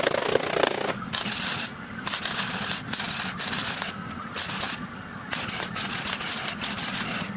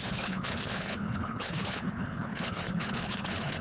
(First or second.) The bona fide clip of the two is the first